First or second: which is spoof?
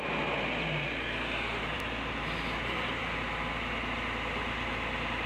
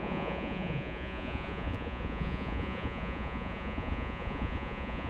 second